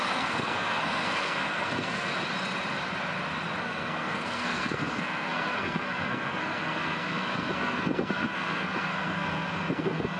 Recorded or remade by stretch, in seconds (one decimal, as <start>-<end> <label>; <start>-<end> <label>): 0.0-2.1 remade; 2.1-3.6 recorded; 3.6-10.2 remade